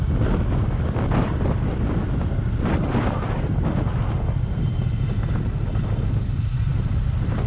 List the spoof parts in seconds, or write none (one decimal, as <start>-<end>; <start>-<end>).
none